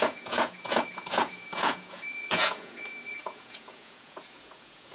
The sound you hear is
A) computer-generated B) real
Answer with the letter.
A